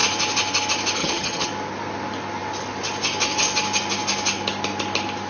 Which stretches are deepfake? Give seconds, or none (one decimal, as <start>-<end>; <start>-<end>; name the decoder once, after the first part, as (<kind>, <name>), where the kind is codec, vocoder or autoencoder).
1.0-1.5 (vocoder, HiFi-GAN)